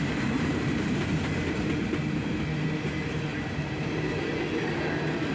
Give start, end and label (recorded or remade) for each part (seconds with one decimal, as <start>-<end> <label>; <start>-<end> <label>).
0.0-3.3 recorded; 3.3-4.0 remade; 4.0-5.3 recorded